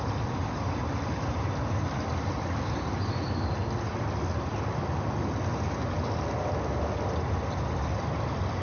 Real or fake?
real